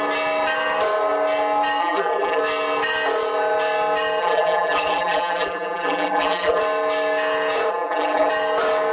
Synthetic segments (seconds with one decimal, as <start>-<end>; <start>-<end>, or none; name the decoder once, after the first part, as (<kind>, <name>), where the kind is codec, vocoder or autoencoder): 1.8-2.4 (vocoder, BigVGAN v2); 4.2-6.6; 7.7-8.3